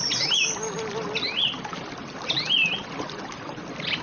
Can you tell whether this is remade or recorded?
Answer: recorded